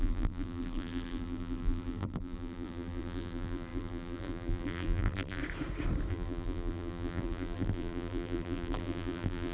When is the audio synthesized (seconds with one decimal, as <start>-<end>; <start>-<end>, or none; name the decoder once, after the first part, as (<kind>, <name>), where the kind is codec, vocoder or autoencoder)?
0.0-5.4 (vocoder, BigVGAN v2); 6.1-9.5